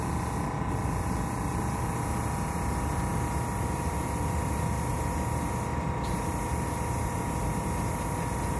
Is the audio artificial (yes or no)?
no